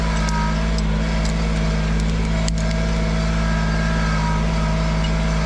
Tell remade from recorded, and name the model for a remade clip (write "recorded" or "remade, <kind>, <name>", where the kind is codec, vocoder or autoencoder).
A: recorded